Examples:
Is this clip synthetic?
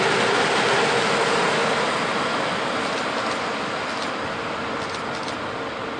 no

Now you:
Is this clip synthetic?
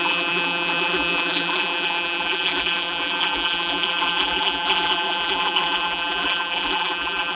yes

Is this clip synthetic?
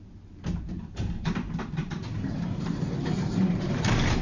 yes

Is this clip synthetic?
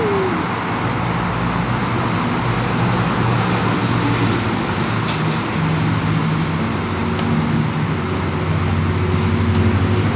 no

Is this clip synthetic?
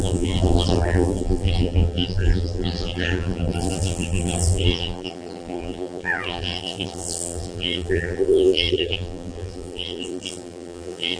yes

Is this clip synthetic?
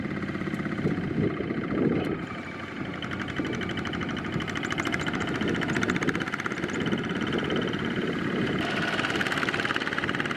yes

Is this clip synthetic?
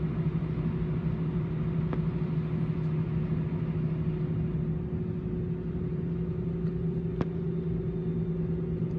no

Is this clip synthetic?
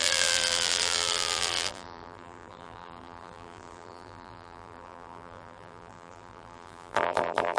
yes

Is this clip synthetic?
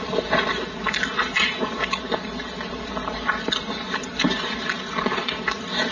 yes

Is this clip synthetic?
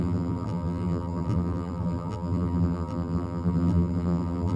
yes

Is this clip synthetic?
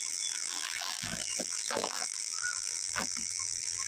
yes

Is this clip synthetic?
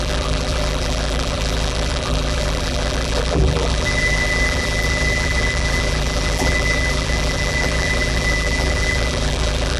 yes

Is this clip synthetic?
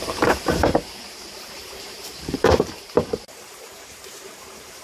yes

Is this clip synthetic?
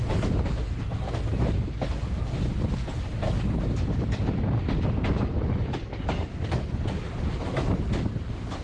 no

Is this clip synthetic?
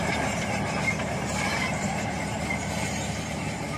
yes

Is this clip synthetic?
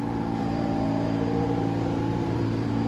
yes